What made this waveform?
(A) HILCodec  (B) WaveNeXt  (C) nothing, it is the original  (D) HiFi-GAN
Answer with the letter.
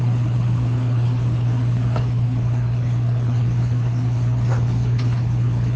A